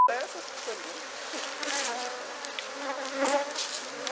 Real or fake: real